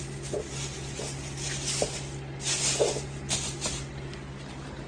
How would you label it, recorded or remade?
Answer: recorded